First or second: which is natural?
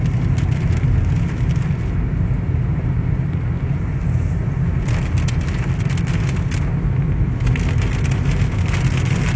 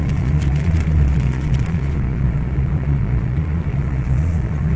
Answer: first